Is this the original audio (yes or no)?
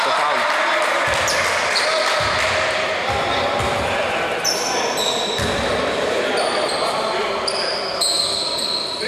no